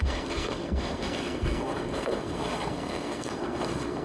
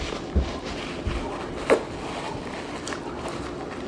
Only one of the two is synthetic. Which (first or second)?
first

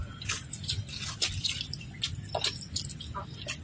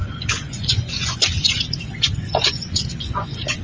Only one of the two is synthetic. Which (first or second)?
second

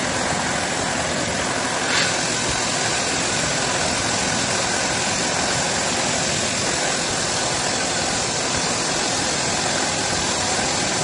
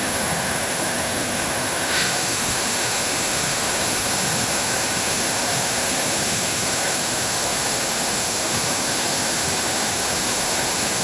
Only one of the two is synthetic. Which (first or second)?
second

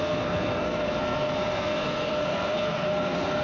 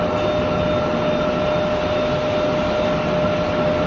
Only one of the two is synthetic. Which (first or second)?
first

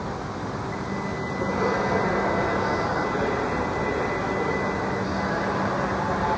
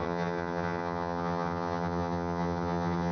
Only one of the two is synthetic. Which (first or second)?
second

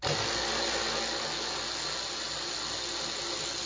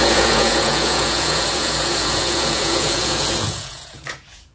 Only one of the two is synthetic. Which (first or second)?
second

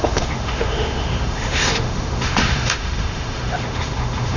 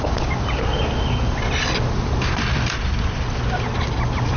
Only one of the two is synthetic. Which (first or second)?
first